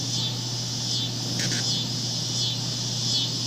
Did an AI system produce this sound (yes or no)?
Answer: no